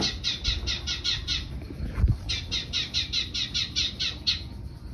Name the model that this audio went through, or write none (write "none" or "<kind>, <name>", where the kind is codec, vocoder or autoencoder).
none